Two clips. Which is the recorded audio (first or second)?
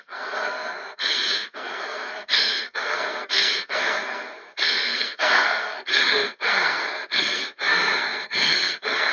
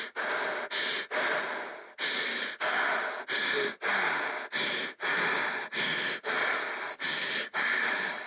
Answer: second